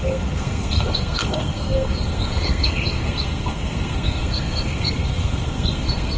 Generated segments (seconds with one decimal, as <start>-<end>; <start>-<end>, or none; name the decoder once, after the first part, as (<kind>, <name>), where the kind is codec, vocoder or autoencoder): 0.0-6.2 (codec, SNAC)